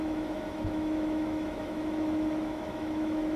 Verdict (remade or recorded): remade